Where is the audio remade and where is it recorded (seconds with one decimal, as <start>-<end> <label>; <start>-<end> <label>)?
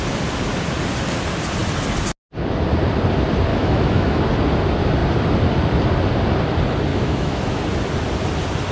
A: 0.0-3.5 recorded; 3.5-4.2 remade; 4.2-6.9 recorded; 6.9-7.6 remade; 7.6-8.7 recorded